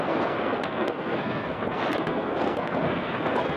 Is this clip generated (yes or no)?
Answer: yes